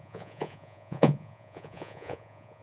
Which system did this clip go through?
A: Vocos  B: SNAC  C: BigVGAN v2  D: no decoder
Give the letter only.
A